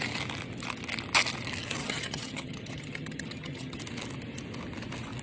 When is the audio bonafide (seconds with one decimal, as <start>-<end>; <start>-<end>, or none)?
0.0-1.8; 3.8-5.2